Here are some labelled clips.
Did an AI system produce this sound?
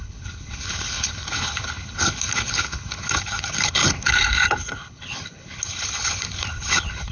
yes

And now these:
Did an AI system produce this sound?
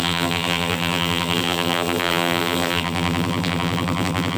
yes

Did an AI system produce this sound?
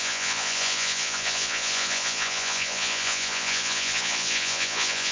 yes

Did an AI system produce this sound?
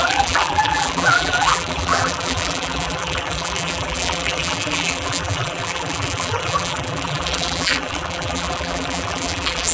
yes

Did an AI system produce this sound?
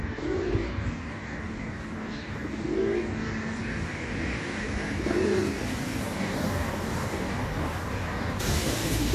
yes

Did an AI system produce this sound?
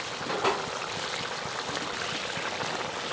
no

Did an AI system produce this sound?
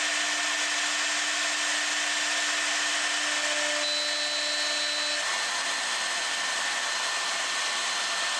no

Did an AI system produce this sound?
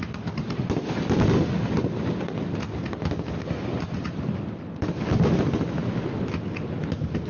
no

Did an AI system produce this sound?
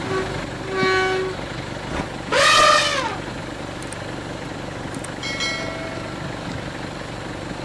no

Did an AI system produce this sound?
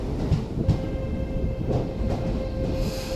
no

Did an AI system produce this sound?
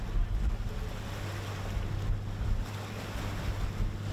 no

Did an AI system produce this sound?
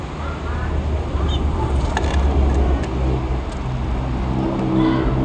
no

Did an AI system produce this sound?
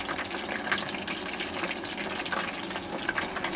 no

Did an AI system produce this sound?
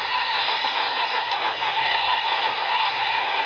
yes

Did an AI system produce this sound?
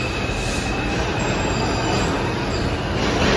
no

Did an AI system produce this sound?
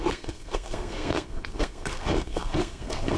yes